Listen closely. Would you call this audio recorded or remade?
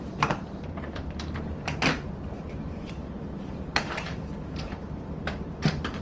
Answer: remade